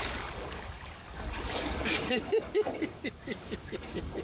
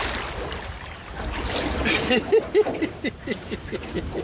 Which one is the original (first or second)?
second